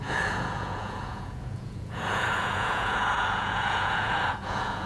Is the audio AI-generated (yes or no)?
yes